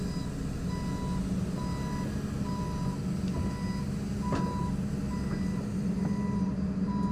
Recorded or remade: recorded